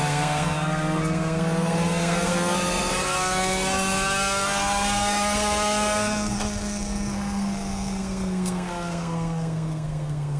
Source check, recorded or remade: remade